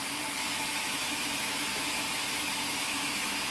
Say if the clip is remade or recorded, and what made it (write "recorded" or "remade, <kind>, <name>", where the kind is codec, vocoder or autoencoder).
remade, autoencoder, DAC-VAE